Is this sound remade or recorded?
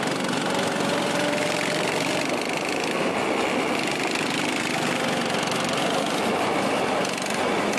recorded